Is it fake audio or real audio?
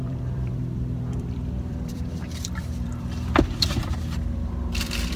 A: fake